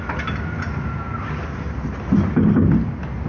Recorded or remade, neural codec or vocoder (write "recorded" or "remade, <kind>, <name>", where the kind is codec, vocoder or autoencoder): recorded